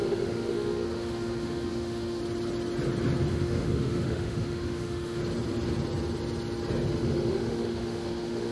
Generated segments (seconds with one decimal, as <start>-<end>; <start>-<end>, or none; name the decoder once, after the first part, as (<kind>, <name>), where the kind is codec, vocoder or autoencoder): 0.0-2.2 (autoencoder, DAC-VAE); 3.3-5.2; 6.9-8.5